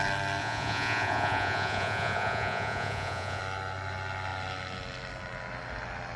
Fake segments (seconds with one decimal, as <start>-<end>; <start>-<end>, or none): 0.4-3.4